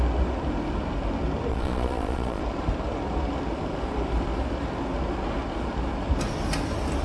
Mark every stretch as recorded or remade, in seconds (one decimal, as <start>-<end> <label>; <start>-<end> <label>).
0.0-1.5 recorded; 1.5-2.4 remade; 2.4-7.0 recorded

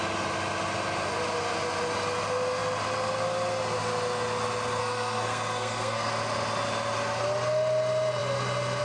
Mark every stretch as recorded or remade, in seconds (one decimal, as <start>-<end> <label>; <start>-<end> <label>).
0.0-4.8 recorded; 4.8-6.1 remade; 6.1-8.8 recorded

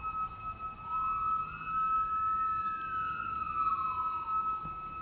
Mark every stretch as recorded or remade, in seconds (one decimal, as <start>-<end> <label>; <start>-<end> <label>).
0.0-5.0 recorded

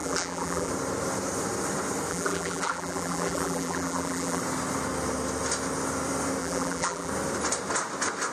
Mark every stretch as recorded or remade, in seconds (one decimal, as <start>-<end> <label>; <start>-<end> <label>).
0.0-0.7 remade; 0.7-2.1 recorded; 2.1-4.4 remade; 4.4-6.4 recorded; 6.4-7.1 remade; 7.1-8.3 recorded

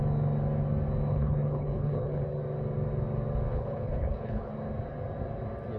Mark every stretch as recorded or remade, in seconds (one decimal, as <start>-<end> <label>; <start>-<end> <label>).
0.0-1.1 recorded; 1.1-2.2 remade; 2.2-3.5 recorded; 3.5-4.5 remade; 4.5-5.8 recorded